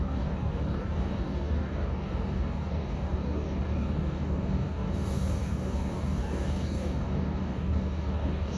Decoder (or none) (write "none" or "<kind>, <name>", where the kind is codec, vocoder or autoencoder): codec, DAC